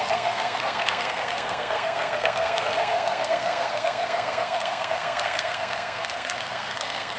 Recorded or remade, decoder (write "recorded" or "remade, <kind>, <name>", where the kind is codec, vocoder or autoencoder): remade, codec, SNAC